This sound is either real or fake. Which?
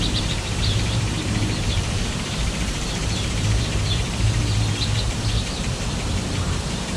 fake